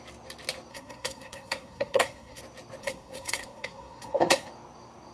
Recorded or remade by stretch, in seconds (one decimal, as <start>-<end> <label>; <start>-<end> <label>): 0.0-0.7 recorded; 0.7-2.4 remade; 2.4-2.8 recorded; 2.8-4.5 remade; 4.5-5.1 recorded

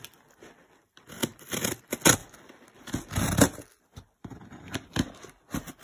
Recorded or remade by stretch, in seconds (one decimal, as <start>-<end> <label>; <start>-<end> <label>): 0.0-1.2 recorded; 1.2-1.8 remade; 1.8-5.8 recorded

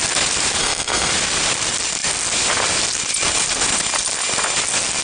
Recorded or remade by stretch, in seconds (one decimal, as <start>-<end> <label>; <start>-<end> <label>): 0.0-0.6 recorded; 0.6-1.1 remade; 1.1-5.0 recorded